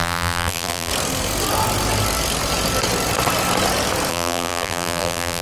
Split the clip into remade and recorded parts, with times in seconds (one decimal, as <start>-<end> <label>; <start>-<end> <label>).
0.0-0.9 remade; 0.9-4.1 recorded; 4.1-5.4 remade